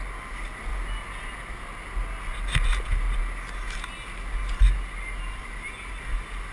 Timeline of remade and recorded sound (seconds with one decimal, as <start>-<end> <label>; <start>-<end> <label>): 0.0-6.5 recorded